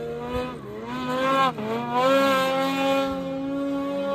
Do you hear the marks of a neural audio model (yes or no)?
no